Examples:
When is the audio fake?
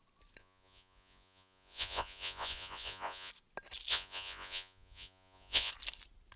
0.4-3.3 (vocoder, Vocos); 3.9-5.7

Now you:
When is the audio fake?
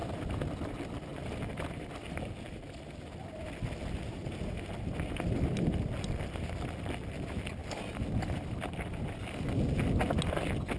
none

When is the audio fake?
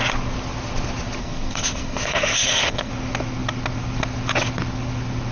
1.2-2.9 (codec, SNAC)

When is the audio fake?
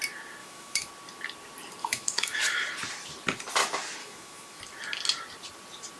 0.4-0.9 (autoencoder, DAC-VAE); 1.8-2.4; 4.0-4.6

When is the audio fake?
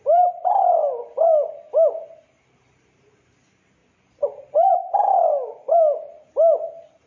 none